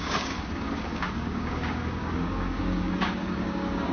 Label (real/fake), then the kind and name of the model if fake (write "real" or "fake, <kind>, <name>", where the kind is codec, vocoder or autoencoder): fake, codec, DAC